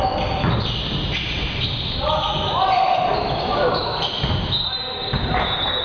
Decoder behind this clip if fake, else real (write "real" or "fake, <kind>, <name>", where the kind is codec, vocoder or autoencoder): real